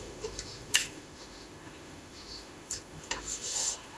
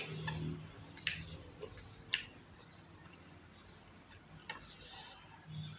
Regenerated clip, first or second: first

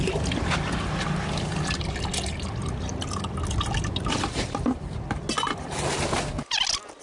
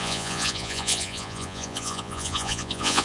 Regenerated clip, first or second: second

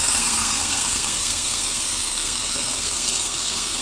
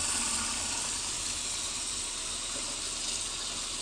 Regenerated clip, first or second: first